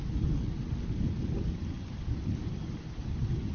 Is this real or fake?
real